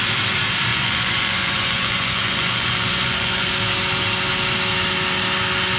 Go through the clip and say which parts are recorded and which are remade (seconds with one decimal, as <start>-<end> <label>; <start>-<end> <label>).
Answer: 0.0-0.7 recorded; 0.7-3.5 remade; 3.5-5.8 recorded